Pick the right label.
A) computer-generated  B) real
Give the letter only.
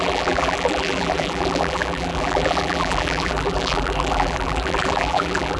A